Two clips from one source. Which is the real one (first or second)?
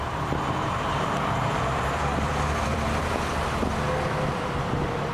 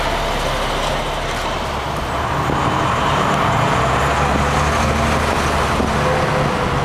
second